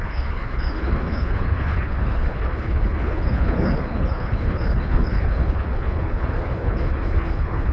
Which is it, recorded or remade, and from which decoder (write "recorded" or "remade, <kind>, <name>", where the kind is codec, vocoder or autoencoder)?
remade, codec, HILCodec